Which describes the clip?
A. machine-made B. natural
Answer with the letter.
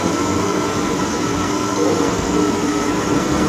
A